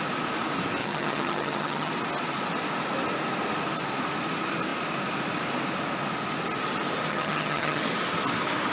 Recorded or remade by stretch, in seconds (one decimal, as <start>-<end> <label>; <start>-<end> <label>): 0.0-0.8 recorded; 0.8-1.9 remade; 1.9-7.1 recorded; 7.1-7.8 remade; 7.8-8.7 recorded